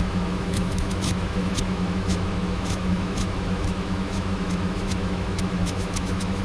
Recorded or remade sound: remade